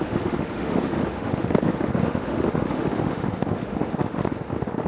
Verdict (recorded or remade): remade